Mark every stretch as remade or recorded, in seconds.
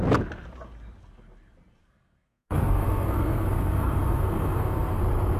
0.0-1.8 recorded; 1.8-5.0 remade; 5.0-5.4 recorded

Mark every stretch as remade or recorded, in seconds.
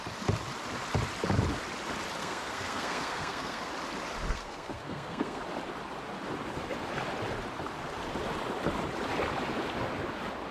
0.0-2.2 recorded; 2.2-3.7 remade; 3.7-4.3 recorded; 4.3-5.4 remade; 5.4-10.5 recorded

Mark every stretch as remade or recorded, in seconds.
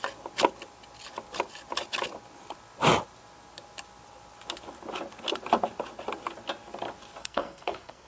0.0-7.2 recorded; 7.2-8.1 remade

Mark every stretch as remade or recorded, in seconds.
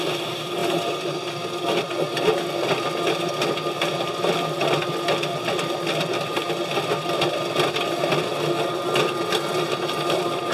0.0-10.5 recorded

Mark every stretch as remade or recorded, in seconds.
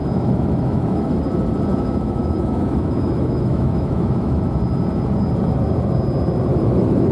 0.0-1.2 remade; 1.2-1.7 recorded; 1.7-4.4 remade; 4.4-6.5 recorded; 6.5-7.1 remade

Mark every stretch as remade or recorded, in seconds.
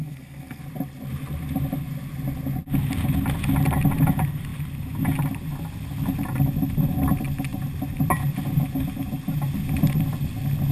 0.0-0.6 remade; 0.6-10.7 recorded